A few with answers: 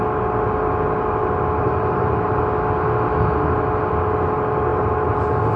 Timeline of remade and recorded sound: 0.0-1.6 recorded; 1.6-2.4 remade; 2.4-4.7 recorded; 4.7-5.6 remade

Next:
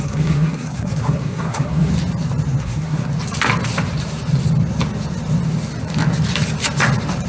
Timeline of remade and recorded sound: 0.0-1.9 remade; 1.9-2.6 recorded; 2.6-3.1 remade; 3.1-7.3 recorded

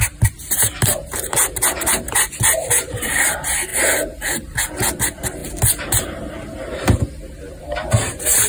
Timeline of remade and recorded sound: 0.0-8.5 recorded

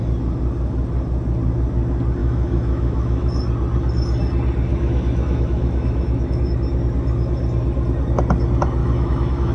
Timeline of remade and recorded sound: 0.0-2.2 recorded; 2.2-3.3 remade; 3.3-4.7 recorded; 4.7-6.5 remade; 6.5-8.8 recorded; 8.8-9.5 remade

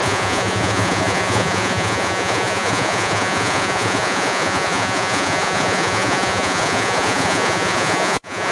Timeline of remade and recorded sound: 0.0-8.5 remade

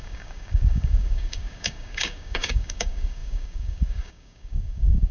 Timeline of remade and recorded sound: 0.0-5.1 remade

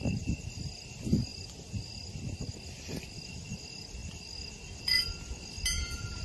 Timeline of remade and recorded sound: 0.0-6.2 recorded